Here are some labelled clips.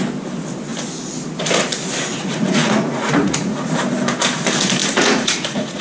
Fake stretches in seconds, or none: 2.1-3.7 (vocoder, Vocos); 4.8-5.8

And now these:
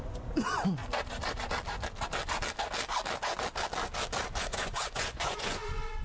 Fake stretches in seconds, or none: 0.0-0.8 (vocoder, Vocos); 4.4-6.0

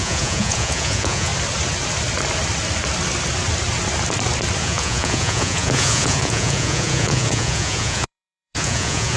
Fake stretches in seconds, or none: 0.0-1.3 (vocoder, Vocos); 4.6-9.2

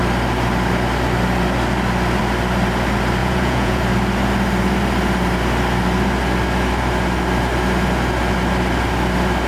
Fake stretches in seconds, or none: 3.2-3.8 (vocoder, Vocos)

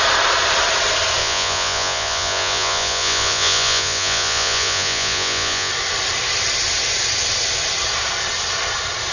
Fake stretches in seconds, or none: 1.2-5.7 (vocoder, Vocos)

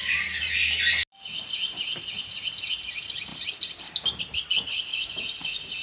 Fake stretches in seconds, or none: none

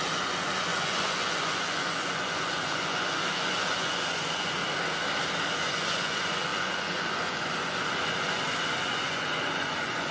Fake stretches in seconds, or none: 0.0-4.6 (vocoder, Vocos); 5.6-10.1